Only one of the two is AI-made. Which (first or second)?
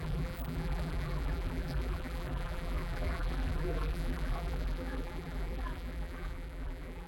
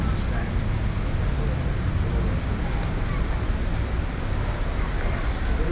first